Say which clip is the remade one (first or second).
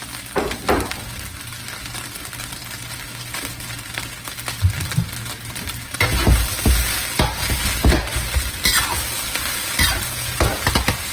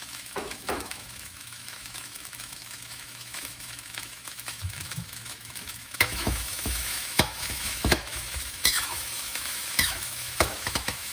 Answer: second